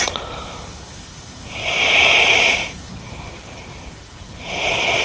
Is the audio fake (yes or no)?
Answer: yes